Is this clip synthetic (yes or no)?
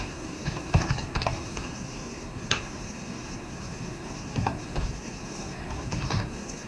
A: yes